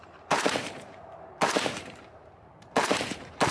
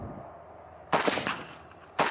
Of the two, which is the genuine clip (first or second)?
second